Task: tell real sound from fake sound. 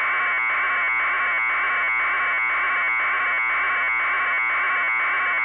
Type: real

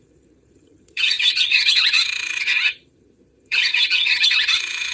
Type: fake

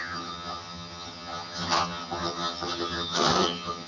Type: fake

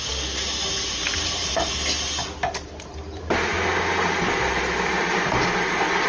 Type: real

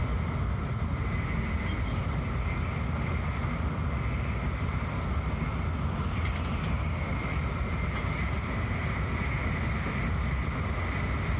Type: real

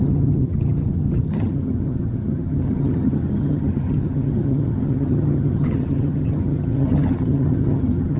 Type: fake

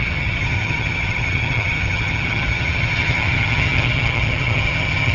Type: fake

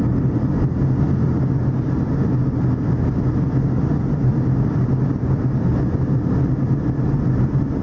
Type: real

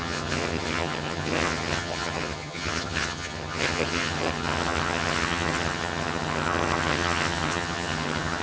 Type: fake